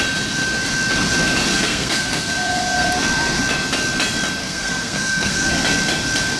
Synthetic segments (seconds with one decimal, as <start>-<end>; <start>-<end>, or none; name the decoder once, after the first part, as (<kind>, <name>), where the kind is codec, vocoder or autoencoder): 1.5-2.9 (codec, SNAC); 4.4-5.5